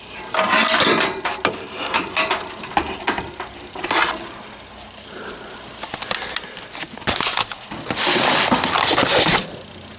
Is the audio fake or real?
real